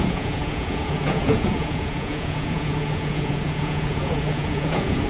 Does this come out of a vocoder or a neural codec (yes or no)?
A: yes